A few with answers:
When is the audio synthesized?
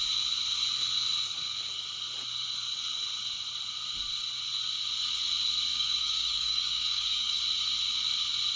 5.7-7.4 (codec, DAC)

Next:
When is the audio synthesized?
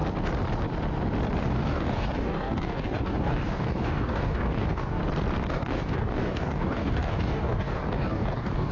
1.4-5.0 (codec, DAC); 5.5-8.7